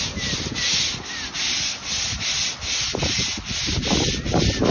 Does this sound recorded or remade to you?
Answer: recorded